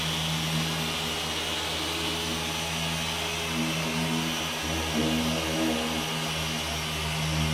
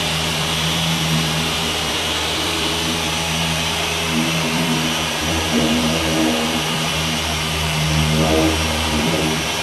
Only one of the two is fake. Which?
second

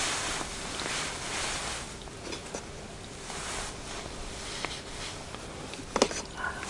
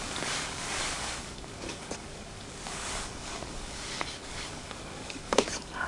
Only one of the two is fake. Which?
second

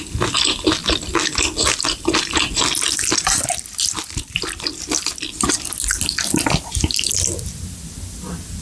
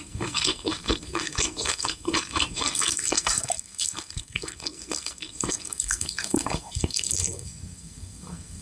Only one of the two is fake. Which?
second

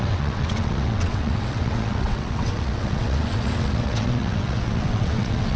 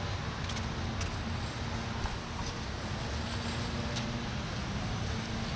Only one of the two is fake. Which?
first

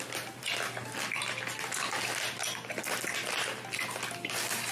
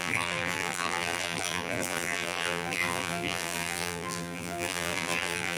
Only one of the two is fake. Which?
second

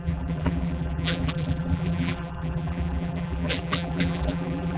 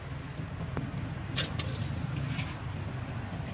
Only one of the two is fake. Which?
first